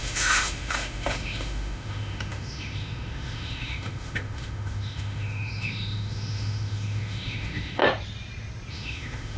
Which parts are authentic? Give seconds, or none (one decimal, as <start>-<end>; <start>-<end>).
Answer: 7.8-8.7